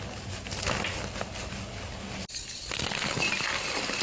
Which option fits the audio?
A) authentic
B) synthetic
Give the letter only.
A